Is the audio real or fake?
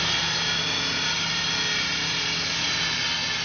real